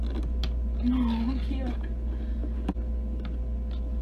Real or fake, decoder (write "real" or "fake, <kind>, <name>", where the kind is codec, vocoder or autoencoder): real